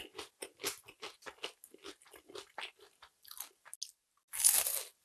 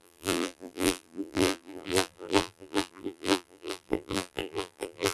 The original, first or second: first